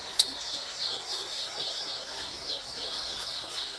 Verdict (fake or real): fake